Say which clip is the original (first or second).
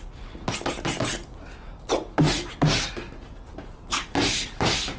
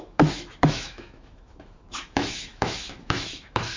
first